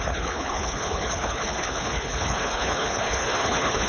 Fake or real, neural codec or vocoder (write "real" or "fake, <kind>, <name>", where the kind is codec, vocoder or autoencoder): fake, codec, HILCodec